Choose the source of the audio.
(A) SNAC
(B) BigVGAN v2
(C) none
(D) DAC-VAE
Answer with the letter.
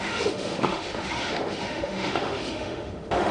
D